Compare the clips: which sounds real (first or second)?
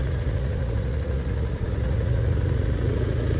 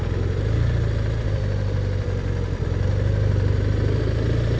second